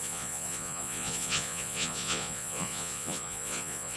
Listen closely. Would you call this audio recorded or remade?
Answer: remade